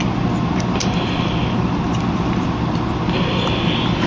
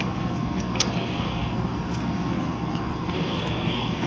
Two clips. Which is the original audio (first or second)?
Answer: first